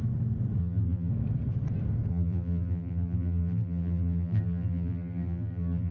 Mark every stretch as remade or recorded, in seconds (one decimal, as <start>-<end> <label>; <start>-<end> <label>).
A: 0.0-0.6 recorded; 0.6-1.1 remade; 1.1-2.1 recorded; 2.1-5.9 remade